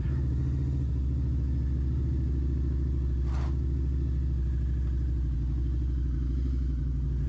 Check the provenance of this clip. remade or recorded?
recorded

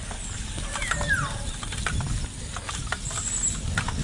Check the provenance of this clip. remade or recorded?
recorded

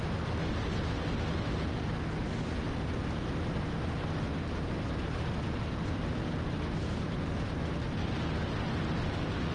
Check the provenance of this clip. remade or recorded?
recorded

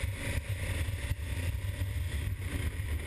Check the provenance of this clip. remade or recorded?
recorded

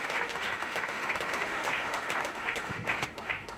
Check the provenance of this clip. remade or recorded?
remade